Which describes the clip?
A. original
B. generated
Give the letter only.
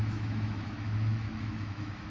B